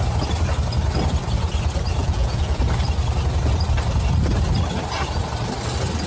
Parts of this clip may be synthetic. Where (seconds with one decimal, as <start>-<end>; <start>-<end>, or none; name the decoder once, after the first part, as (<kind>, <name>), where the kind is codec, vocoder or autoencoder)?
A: 2.0-2.6 (vocoder, Vocos)

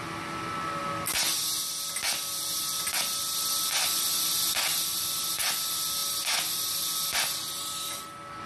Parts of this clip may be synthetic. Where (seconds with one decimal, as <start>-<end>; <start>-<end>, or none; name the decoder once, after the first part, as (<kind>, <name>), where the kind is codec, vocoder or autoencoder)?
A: none

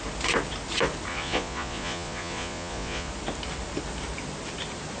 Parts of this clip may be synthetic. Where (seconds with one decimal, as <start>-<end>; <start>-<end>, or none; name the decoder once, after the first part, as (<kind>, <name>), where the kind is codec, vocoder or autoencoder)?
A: 1.1-3.1 (vocoder, Vocos)

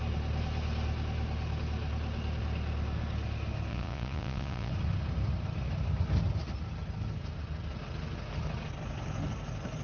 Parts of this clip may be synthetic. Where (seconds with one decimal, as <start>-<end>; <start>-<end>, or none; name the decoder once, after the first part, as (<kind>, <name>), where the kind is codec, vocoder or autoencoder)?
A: 3.7-4.7 (vocoder, Vocos)